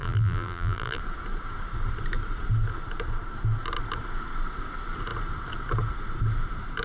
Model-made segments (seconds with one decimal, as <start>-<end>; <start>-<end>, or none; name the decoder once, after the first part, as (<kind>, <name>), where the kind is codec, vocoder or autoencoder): 0.0-1.0 (vocoder, BigVGAN v2)